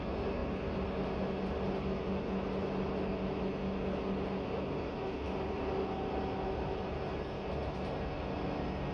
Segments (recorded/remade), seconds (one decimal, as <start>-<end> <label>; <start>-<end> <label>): 0.0-8.9 recorded